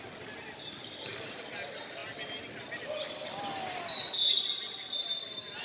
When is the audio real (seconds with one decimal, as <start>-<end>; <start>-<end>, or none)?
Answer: 0.0-5.6